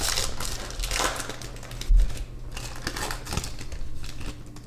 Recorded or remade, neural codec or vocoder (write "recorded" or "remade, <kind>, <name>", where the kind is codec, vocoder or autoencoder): recorded